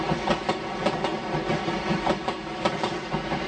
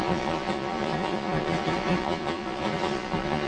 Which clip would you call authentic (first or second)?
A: first